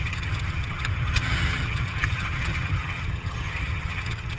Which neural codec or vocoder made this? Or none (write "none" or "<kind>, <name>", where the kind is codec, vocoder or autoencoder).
vocoder, HiFi-GAN